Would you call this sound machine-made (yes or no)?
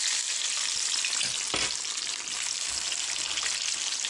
no